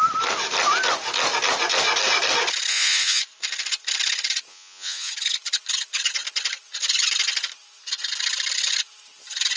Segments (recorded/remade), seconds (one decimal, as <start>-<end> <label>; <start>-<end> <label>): 0.0-2.7 recorded; 2.7-3.2 remade; 3.2-4.5 recorded; 4.5-5.1 remade; 5.1-9.6 recorded